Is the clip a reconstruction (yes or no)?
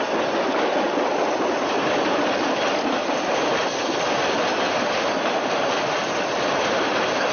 no